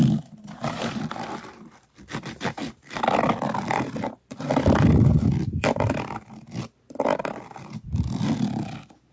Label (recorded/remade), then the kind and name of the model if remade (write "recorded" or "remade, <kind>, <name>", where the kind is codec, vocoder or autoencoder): remade, vocoder, BigVGAN v2